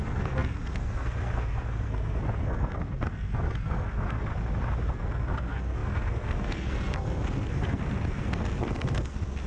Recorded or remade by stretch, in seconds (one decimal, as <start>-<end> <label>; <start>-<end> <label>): 0.0-4.3 remade; 4.3-4.9 recorded; 4.9-9.5 remade